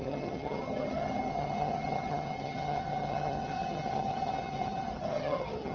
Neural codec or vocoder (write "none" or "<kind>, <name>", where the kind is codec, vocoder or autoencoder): vocoder, HiFi-GAN